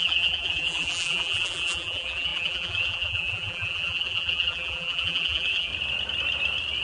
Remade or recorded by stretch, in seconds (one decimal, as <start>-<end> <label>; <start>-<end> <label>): 0.0-5.7 remade; 5.7-6.8 recorded